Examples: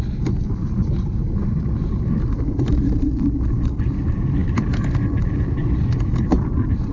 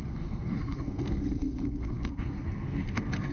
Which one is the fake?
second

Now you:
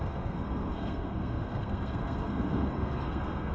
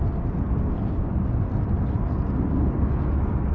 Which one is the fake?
first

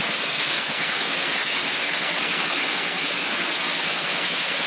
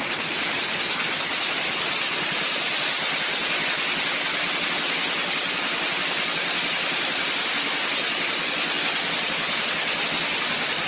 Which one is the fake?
first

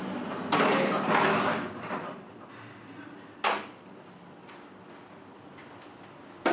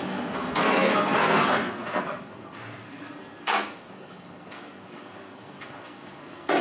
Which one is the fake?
second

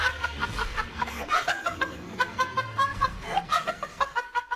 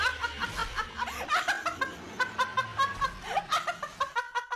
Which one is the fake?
first